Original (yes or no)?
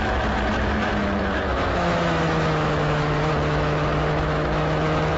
no